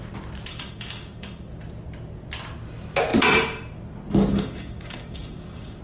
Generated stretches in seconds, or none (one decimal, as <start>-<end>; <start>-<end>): 0.5-1.5; 4.3-5.8